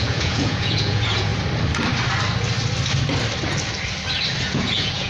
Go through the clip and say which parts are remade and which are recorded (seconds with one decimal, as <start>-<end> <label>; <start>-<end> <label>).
0.0-1.3 remade; 1.3-4.4 recorded; 4.4-5.1 remade